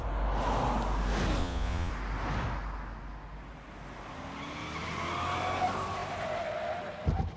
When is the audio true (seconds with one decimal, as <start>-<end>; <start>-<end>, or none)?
0.0-1.4; 1.9-7.4